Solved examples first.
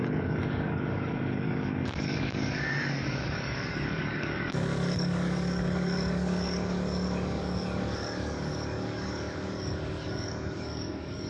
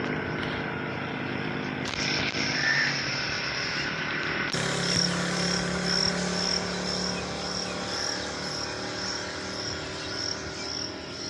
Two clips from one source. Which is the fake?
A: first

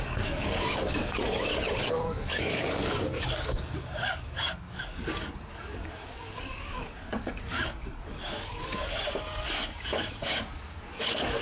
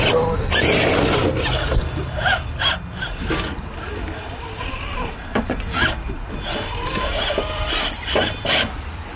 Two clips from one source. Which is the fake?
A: first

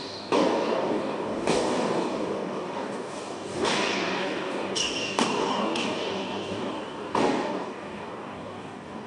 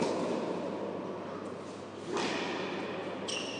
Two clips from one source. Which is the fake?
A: first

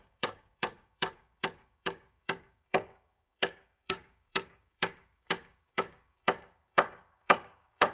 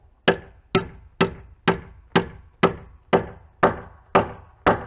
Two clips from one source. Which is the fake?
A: first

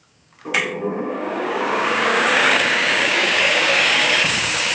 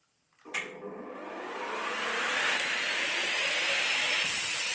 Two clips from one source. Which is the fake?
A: first